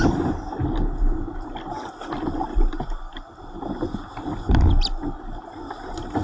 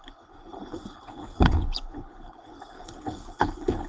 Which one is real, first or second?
first